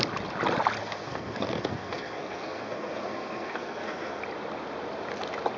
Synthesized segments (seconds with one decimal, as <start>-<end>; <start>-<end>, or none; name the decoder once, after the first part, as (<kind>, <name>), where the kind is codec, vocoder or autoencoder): 0.8-4.2 (codec, SNAC)